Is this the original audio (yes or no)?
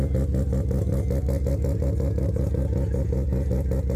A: yes